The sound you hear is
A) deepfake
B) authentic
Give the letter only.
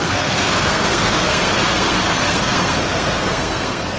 A